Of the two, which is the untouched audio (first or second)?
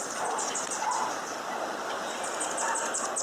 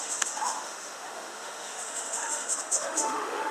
first